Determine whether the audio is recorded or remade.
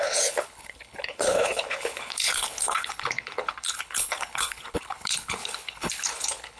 remade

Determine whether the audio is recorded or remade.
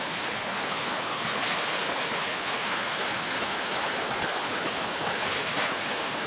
remade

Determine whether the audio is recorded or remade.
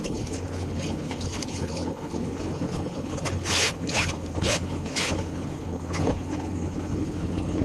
remade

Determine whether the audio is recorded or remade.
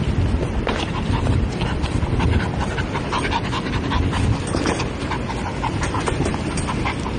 recorded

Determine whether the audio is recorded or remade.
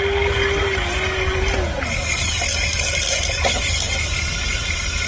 recorded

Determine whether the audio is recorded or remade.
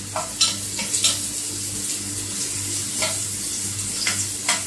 recorded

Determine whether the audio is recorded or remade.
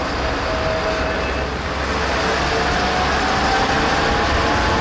recorded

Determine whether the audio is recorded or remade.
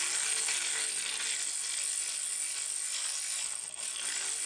recorded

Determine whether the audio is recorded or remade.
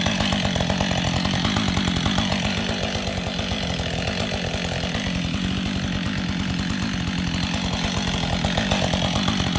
recorded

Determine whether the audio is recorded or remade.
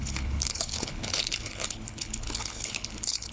remade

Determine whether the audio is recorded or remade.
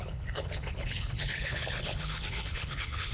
remade